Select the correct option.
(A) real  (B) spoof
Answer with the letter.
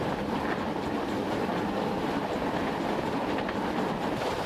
A